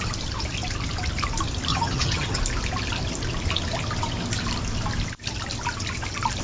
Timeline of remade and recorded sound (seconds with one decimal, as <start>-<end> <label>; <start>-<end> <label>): 0.0-1.7 recorded; 1.7-2.4 remade; 2.4-6.4 recorded